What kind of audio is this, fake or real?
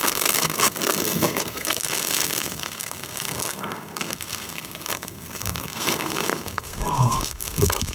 fake